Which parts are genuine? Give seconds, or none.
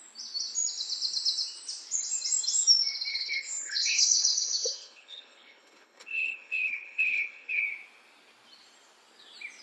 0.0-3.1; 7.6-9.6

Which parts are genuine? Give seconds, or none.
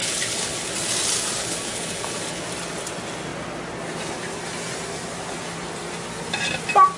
0.7-1.4; 2.4-7.0